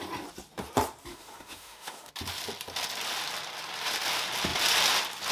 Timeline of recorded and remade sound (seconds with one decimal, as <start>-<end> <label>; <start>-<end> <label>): 0.0-1.1 recorded; 1.1-2.1 remade; 2.1-5.3 recorded